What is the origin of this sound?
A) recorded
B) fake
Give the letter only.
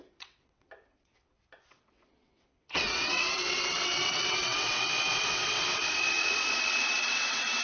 B